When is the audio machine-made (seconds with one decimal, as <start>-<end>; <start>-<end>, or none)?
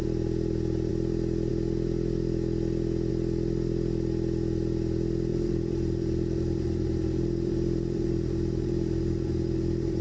5.3-10.0